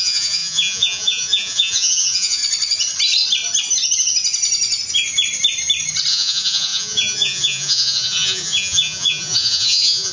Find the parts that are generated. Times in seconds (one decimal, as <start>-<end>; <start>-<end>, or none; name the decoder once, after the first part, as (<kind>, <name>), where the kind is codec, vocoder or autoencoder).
0.0-2.4 (vocoder, Vocos); 6.1-10.1